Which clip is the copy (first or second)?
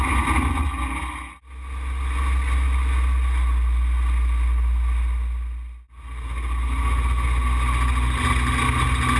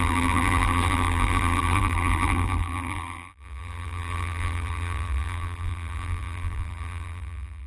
second